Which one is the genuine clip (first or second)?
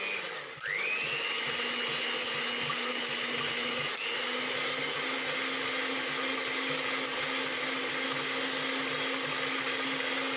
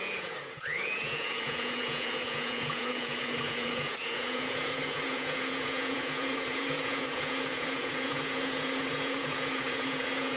first